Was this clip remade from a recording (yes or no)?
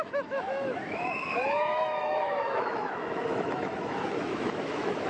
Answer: yes